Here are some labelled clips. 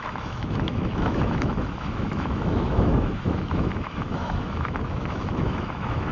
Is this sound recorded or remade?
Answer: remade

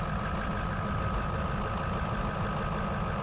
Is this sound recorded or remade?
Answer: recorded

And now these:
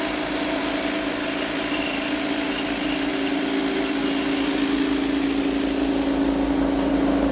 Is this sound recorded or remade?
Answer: recorded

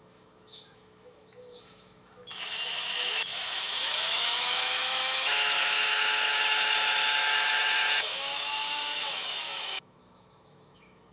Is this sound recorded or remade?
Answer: remade